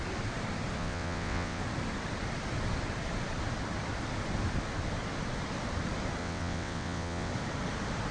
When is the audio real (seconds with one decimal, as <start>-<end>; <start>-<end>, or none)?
0.0-0.8; 1.6-6.2; 7.3-8.1

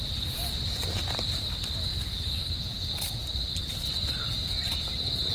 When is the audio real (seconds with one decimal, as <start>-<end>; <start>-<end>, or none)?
0.0-5.3

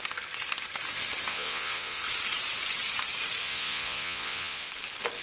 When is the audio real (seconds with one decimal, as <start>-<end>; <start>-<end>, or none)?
0.0-1.3; 2.0-3.4; 4.7-5.2